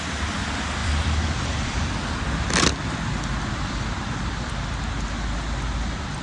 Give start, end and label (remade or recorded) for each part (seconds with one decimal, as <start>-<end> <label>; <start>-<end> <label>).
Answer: 0.0-0.8 recorded; 0.8-4.5 remade; 4.5-6.2 recorded